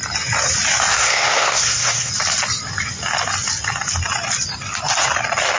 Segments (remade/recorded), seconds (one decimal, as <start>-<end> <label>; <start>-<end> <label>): 0.0-0.9 recorded; 0.9-2.1 remade; 2.1-5.6 recorded